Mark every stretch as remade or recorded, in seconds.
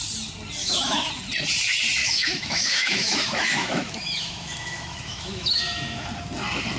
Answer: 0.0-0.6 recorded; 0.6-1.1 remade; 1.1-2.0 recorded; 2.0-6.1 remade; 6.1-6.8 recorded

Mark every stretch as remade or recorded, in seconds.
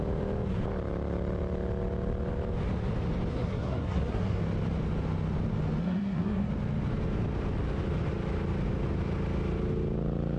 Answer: 0.0-3.3 recorded; 3.3-4.4 remade; 4.4-5.8 recorded; 5.8-6.5 remade; 6.5-10.4 recorded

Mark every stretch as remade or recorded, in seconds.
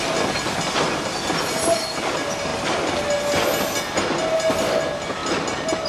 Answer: 0.0-5.9 recorded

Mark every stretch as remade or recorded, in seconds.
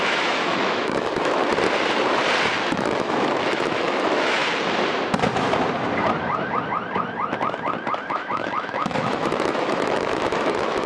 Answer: 0.0-1.4 remade; 1.4-2.7 recorded; 2.7-4.4 remade; 4.4-8.1 recorded; 8.1-10.9 remade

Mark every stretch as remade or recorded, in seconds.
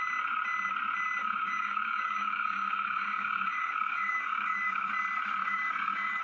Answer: 0.0-1.2 recorded; 1.2-4.9 remade; 4.9-5.4 recorded; 5.4-6.2 remade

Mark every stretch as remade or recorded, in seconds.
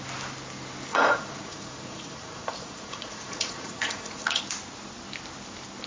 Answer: 0.0-0.9 recorded; 0.9-4.4 remade; 4.4-5.9 recorded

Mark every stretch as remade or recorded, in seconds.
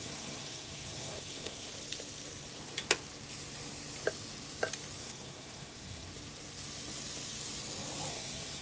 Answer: 0.0-1.7 remade; 1.7-5.0 recorded; 5.0-6.1 remade; 6.1-8.1 recorded; 8.1-8.6 remade